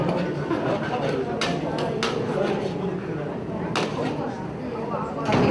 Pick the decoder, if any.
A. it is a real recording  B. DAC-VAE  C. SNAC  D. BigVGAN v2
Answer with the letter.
A